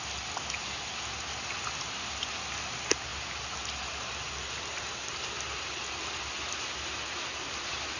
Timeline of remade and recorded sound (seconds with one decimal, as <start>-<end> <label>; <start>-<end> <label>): 0.0-8.0 recorded